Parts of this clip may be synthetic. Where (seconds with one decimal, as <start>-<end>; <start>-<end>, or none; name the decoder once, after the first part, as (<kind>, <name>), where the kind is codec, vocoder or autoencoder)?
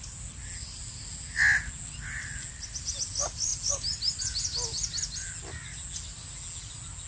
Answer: none